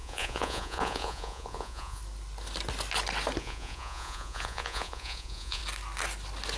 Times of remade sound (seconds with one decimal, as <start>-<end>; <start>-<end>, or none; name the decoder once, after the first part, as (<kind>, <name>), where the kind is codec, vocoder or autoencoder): 0.0-2.0 (vocoder, Vocos); 3.4-5.6